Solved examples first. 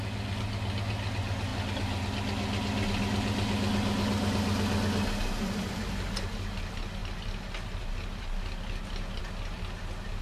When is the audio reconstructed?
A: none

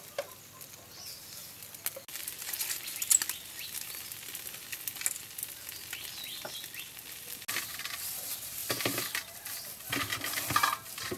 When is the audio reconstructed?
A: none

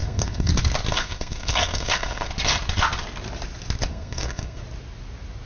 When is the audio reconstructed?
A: 0.0-0.5 (codec, SNAC); 0.9-2.3; 3.9-4.6